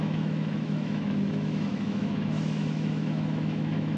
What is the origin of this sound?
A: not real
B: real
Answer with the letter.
A